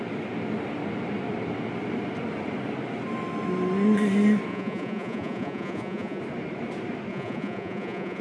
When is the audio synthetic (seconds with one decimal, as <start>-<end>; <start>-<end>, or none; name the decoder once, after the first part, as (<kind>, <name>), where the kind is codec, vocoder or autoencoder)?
4.5-6.2 (vocoder, Vocos); 7.1-8.2